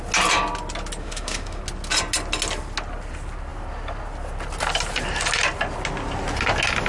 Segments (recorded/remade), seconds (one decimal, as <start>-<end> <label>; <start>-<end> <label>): 0.0-1.0 recorded; 1.0-1.6 remade; 1.6-6.9 recorded